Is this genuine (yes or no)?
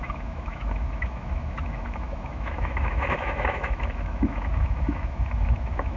no